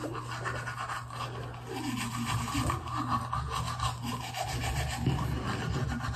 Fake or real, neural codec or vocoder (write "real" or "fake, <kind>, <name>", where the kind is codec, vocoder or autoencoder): real